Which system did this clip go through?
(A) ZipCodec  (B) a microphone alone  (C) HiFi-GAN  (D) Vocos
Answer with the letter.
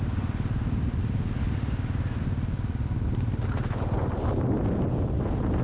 B